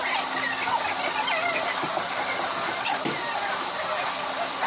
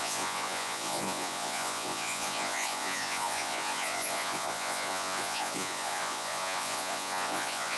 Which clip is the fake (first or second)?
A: second